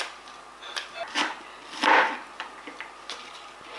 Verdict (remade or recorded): recorded